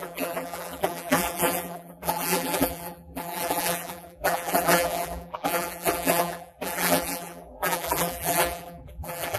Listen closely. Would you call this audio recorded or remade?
remade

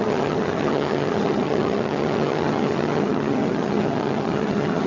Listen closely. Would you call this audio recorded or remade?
remade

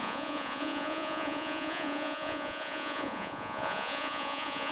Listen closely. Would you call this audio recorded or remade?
remade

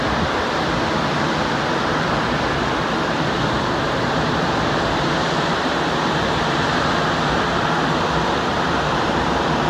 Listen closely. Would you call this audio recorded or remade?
remade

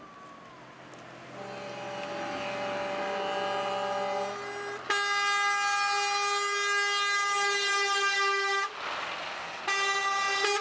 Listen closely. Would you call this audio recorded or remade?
recorded